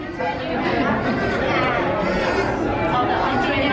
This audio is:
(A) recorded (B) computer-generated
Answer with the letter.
A